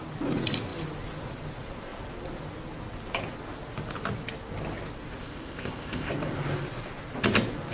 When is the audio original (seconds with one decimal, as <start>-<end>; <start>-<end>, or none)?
0.0-5.2; 6.1-7.7